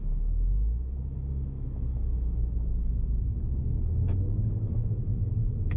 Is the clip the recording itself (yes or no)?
no